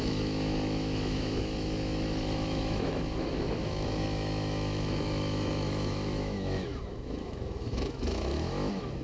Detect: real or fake fake